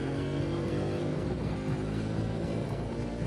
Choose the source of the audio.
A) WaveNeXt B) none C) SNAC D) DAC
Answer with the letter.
C